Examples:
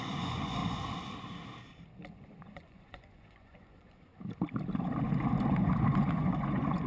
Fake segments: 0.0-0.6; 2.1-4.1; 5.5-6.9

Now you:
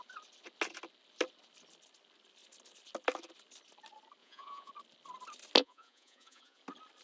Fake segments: 4.2-4.7; 5.6-6.6